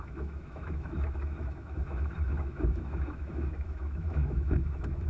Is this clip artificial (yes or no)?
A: yes